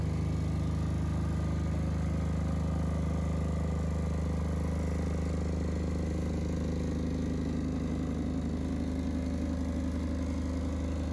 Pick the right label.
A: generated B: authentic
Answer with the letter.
B